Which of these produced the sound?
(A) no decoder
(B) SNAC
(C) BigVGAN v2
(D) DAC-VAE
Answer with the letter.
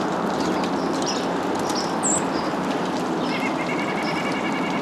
A